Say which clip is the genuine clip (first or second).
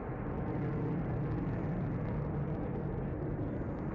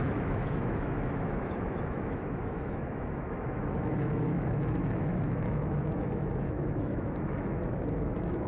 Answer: first